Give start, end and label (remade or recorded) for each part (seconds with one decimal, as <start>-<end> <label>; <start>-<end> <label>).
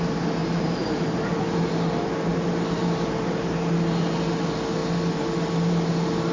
0.0-0.4 recorded; 0.4-1.4 remade; 1.4-2.3 recorded; 2.3-3.4 remade; 3.4-6.3 recorded